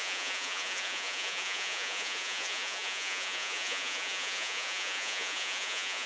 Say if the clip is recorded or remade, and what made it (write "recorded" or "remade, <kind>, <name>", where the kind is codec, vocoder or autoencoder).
remade, vocoder, Vocos